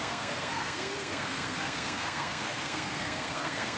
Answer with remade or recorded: remade